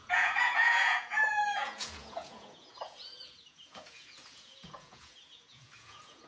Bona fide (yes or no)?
no